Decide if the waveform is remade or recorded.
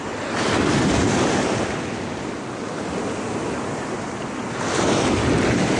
recorded